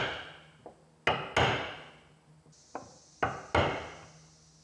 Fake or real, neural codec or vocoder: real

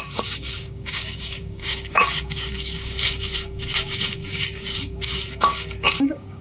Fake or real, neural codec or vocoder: fake, codec, DAC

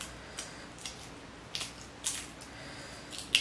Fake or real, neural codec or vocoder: real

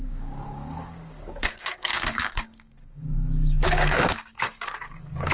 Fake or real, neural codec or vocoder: fake, codec, DAC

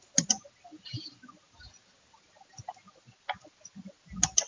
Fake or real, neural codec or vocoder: real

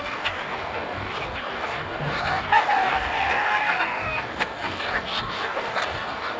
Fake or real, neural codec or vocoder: fake, codec, DAC